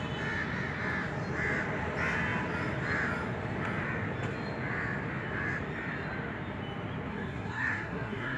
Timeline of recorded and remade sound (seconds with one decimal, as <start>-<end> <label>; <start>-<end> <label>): 0.0-7.1 recorded; 7.1-8.4 remade